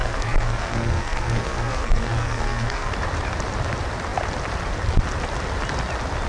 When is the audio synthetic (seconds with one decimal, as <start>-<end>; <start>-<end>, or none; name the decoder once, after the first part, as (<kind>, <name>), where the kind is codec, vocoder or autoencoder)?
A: 0.0-2.9 (codec, SNAC)